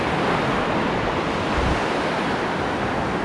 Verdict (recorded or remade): recorded